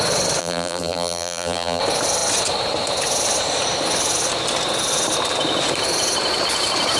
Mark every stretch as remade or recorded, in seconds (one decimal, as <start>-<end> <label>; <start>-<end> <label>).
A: 0.0-0.4 recorded; 0.4-1.8 remade; 1.8-7.0 recorded